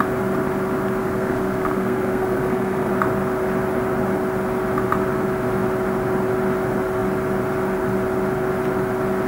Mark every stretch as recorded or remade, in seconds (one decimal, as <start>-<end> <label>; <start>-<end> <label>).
0.0-1.0 recorded; 1.0-2.9 remade; 2.9-9.3 recorded